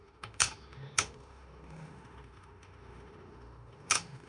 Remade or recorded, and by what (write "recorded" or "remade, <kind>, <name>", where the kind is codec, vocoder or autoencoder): remade, autoencoder, DAC-VAE